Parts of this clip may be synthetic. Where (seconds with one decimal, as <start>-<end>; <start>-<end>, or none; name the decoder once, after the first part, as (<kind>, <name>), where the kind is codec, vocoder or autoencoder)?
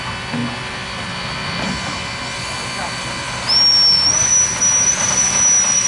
none